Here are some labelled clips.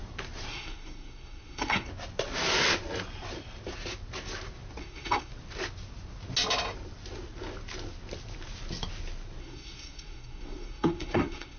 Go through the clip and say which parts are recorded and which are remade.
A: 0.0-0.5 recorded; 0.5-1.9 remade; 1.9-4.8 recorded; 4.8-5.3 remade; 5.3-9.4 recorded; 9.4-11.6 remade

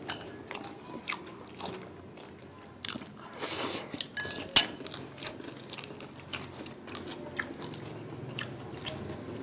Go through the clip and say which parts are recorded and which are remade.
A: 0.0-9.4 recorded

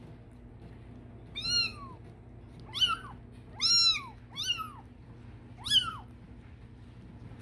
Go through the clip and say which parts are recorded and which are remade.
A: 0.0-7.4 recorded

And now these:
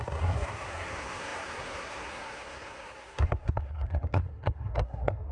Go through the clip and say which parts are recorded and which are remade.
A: 0.0-5.3 remade

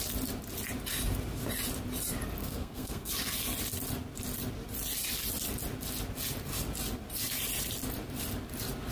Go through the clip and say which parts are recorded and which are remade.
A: 0.0-2.4 recorded; 2.4-3.1 remade; 3.1-8.9 recorded

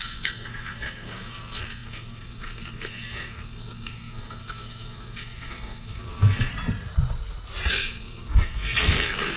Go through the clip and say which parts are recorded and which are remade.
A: 0.0-6.5 remade; 6.5-7.7 recorded; 7.7-9.4 remade

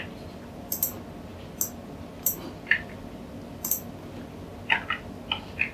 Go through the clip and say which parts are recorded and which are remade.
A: 0.0-5.7 recorded

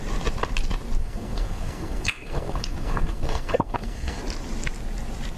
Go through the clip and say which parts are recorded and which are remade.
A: 0.0-1.0 recorded; 1.0-4.2 remade; 4.2-5.4 recorded